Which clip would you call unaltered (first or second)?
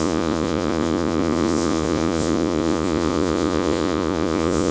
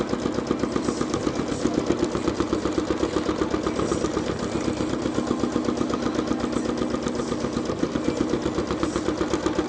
second